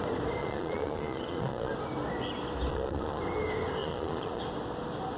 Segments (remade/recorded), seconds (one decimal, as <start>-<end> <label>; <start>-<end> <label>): 0.0-0.4 recorded; 0.4-1.7 remade; 1.7-2.7 recorded; 2.7-3.2 remade; 3.2-3.8 recorded; 3.8-4.4 remade; 4.4-5.2 recorded